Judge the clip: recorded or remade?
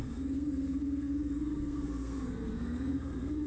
remade